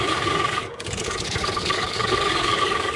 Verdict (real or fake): fake